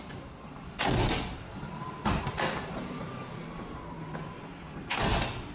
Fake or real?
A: real